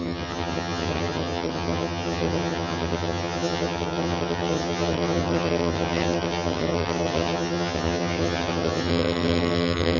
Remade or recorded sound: remade